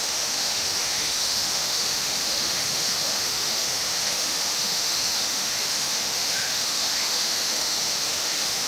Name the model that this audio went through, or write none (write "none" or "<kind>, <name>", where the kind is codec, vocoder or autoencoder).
autoencoder, DAC-VAE